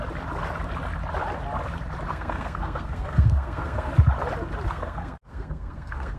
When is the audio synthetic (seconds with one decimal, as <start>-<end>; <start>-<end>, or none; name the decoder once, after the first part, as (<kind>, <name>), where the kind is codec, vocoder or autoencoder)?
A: 2.1-3.9 (codec, SNAC); 4.7-6.2